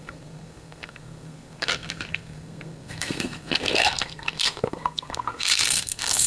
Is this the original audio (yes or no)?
no